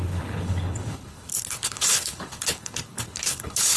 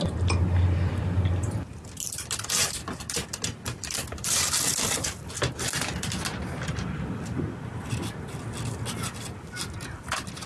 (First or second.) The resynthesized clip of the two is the first